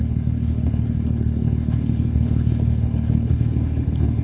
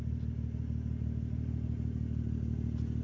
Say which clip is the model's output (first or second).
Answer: first